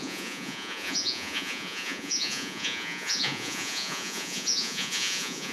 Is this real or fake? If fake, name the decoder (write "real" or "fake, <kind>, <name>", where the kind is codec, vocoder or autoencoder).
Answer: fake, vocoder, Vocos